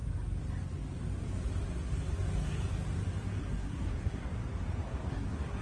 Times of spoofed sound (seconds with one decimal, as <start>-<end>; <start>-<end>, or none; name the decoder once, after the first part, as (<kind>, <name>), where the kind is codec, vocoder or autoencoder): 3.4-4.4 (codec, SNAC); 5.1-5.6